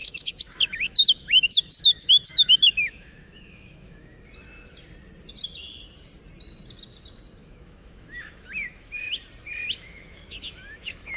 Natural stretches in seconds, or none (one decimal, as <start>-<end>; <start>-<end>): 4.2-7.4; 9.2-9.6